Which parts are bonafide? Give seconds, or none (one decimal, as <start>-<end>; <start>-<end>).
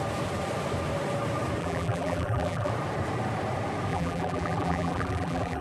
0.0-1.6; 2.7-3.9